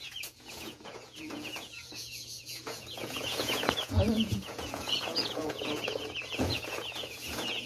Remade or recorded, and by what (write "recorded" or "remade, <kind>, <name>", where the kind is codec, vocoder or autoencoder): remade, vocoder, Vocos